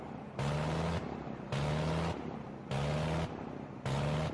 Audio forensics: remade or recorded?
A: recorded